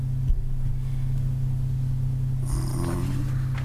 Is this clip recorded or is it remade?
recorded